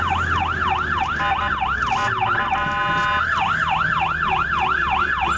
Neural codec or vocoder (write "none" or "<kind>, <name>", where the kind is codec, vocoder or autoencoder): none